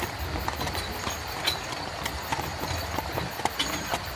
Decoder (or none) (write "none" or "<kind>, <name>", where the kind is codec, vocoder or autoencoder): none